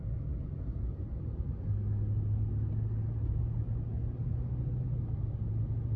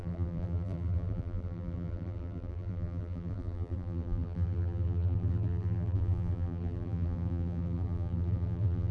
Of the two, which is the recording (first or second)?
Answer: first